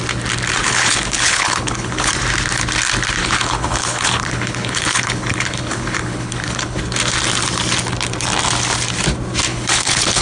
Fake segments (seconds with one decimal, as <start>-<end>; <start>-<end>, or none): 0.6-2.1; 3.2-6.8; 9.5-10.2